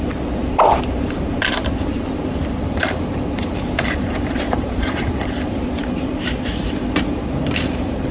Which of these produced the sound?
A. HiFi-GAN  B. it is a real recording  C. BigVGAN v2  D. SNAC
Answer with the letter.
C